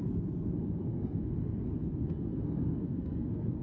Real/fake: fake